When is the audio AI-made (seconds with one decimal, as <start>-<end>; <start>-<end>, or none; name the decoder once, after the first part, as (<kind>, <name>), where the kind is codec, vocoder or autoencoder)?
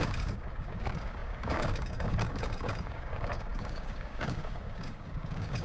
0.0-5.6 (codec, DAC)